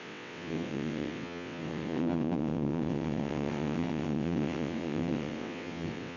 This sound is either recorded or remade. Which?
remade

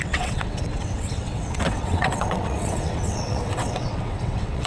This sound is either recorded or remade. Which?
remade